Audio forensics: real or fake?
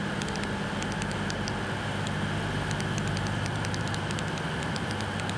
real